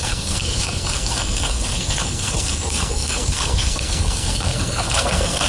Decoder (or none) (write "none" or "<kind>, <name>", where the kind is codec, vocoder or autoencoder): codec, SNAC